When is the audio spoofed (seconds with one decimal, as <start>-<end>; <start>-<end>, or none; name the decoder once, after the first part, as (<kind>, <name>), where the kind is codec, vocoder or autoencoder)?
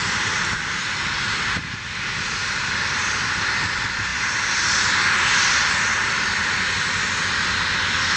0.0-0.6 (vocoder, BigVGAN v2)